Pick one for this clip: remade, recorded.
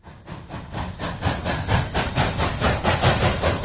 recorded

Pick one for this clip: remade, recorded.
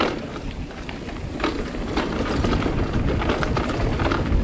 recorded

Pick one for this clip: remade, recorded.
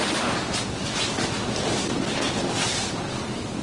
recorded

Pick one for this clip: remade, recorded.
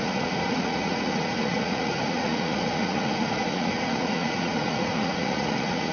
remade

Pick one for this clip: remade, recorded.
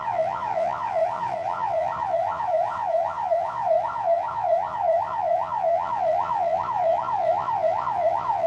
remade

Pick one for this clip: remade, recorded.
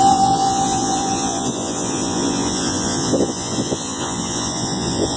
remade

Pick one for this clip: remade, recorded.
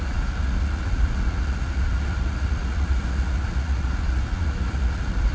remade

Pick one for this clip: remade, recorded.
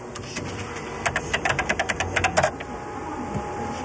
recorded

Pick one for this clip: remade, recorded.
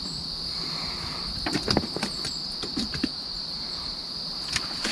recorded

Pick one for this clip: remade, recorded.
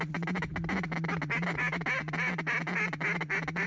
recorded